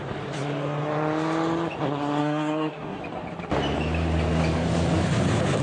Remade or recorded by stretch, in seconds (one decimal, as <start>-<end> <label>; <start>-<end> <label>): 0.0-2.2 recorded; 2.2-3.0 remade; 3.0-5.6 recorded